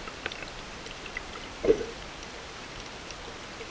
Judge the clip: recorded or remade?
recorded